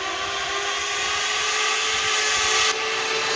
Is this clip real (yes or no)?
yes